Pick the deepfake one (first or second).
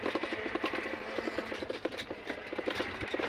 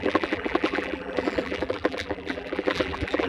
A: second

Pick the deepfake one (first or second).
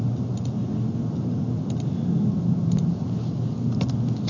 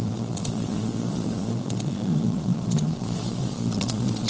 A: second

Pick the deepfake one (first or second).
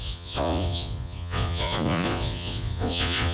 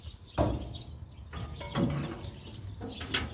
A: first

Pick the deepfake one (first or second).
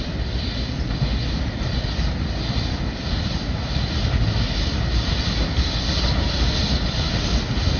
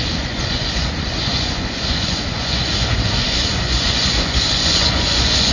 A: second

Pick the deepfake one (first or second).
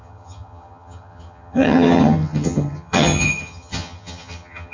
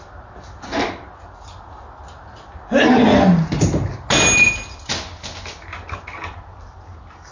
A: first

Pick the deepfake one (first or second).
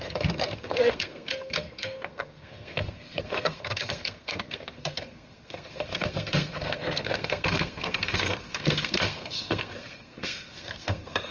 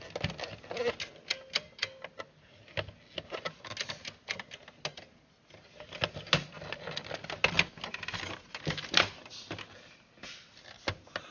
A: first